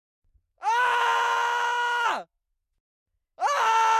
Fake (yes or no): no